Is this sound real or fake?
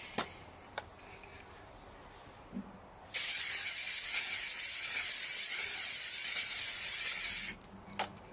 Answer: real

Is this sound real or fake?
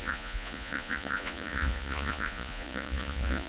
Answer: fake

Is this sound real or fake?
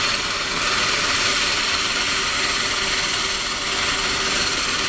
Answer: real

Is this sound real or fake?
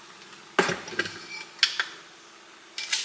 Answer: real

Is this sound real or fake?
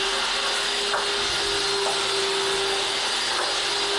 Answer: real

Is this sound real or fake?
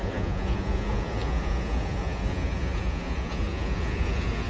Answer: fake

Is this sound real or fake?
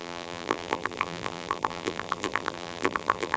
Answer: fake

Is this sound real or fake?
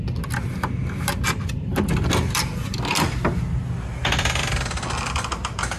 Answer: real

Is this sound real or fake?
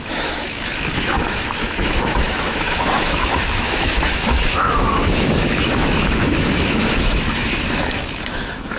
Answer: fake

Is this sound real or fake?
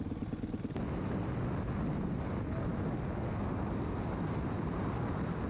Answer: real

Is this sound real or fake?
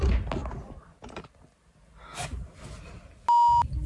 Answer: real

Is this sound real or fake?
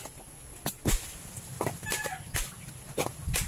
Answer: real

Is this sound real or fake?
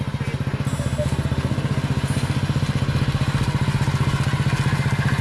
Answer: real